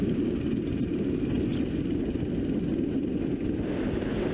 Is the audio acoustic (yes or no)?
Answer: yes